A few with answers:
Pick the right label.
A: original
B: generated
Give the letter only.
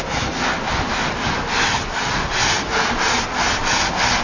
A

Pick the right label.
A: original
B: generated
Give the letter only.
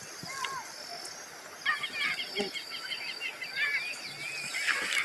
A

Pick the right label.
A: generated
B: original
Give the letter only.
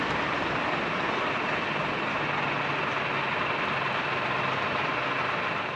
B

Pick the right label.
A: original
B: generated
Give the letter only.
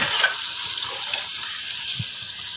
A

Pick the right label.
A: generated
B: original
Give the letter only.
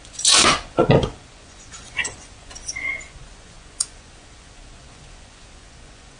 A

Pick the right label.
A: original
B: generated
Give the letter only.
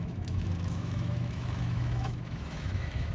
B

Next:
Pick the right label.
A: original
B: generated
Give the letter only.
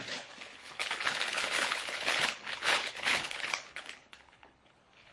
B